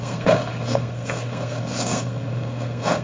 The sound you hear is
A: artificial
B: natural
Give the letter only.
A